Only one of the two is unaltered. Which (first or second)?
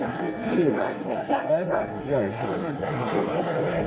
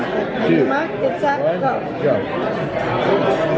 second